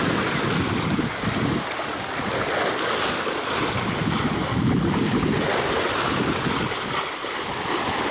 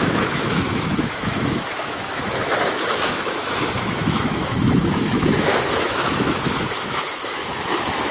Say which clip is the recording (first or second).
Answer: first